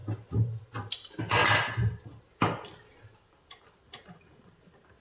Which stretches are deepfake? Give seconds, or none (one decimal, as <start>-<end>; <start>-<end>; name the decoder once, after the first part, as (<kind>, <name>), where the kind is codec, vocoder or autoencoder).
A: none